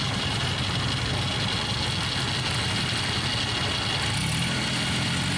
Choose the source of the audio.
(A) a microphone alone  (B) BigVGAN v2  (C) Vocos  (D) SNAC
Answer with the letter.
A